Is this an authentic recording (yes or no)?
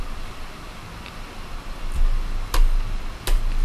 yes